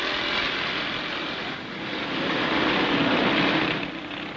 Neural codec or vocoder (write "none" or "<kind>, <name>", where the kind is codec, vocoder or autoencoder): none